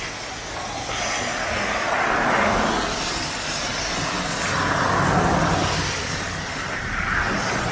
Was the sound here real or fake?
real